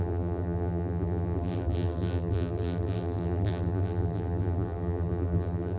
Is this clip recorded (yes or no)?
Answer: no